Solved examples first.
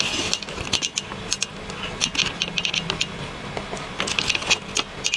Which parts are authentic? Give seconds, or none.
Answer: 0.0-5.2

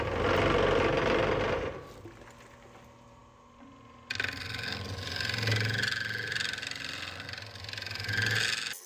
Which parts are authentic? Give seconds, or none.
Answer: 0.0-8.9

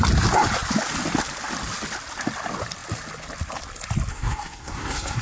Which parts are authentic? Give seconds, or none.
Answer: 0.0-4.1

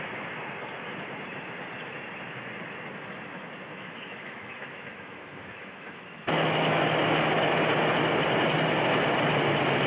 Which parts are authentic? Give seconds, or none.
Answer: 0.0-3.7; 6.8-9.9